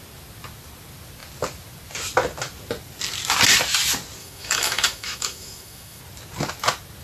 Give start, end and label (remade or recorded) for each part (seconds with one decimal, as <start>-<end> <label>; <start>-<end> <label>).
0.0-4.2 recorded; 4.2-6.0 remade; 6.0-7.0 recorded